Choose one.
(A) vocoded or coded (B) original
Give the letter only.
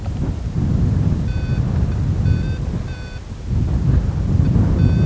B